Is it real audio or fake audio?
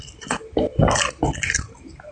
real